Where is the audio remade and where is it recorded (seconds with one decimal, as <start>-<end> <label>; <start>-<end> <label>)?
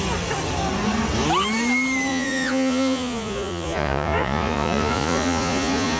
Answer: 0.0-2.1 recorded; 2.1-6.0 remade